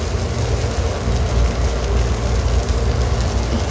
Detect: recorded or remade recorded